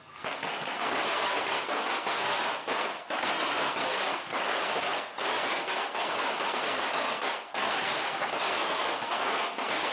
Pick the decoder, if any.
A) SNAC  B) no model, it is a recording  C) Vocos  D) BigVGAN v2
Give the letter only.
A